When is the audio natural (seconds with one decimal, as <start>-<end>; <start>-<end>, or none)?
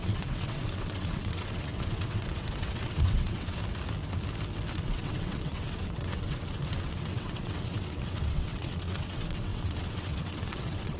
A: 3.6-4.7